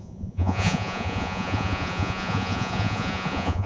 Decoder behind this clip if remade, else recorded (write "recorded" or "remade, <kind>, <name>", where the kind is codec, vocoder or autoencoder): remade, vocoder, Vocos